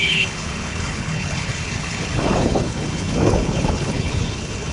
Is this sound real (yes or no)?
no